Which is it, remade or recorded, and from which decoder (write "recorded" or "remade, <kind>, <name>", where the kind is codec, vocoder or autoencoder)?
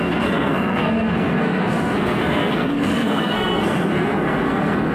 remade, codec, SNAC